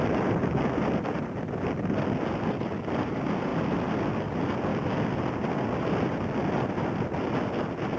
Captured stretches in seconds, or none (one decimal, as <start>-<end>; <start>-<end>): 0.0-0.4; 1.4-4.7; 5.5-8.0